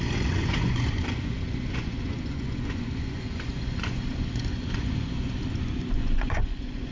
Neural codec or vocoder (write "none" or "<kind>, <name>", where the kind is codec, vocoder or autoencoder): vocoder, Vocos